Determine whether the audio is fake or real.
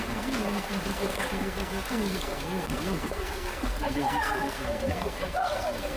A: fake